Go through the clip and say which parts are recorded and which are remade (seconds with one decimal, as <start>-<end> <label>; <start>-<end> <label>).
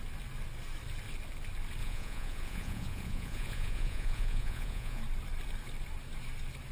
0.0-1.8 recorded; 1.8-5.0 remade; 5.0-6.7 recorded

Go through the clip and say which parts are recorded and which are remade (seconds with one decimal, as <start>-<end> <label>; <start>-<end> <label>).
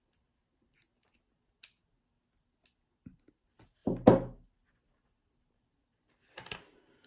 0.0-7.1 recorded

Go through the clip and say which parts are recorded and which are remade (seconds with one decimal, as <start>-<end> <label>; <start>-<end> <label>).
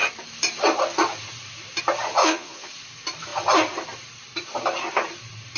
0.0-2.2 recorded; 2.2-2.7 remade; 2.7-5.6 recorded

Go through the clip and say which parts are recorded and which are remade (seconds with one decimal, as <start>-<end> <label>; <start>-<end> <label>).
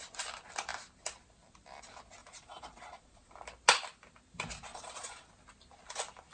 0.0-2.2 recorded; 2.2-3.3 remade; 3.3-4.7 recorded; 4.7-5.3 remade; 5.3-6.3 recorded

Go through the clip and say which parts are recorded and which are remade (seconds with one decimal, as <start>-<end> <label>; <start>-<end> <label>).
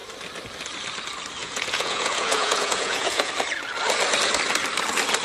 0.0-1.4 recorded; 1.4-3.3 remade; 3.3-5.2 recorded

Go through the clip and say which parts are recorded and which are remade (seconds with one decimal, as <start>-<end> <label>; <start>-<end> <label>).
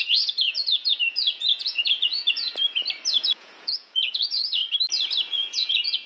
0.0-2.5 remade; 2.5-3.1 recorded; 3.1-4.6 remade; 4.6-5.3 recorded; 5.3-6.1 remade